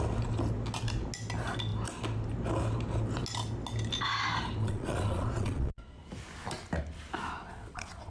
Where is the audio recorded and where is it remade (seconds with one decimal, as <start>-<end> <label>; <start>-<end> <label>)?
0.0-4.6 recorded; 4.6-6.0 remade; 6.0-7.4 recorded; 7.4-8.1 remade